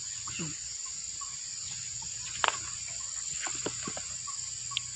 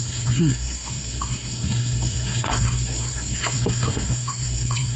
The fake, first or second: second